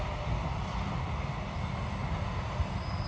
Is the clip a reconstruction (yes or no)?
no